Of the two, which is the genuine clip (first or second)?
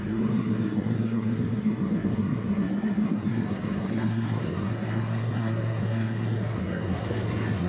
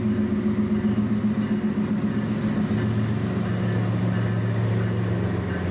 second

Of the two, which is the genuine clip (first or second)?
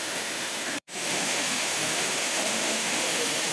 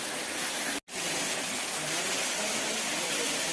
second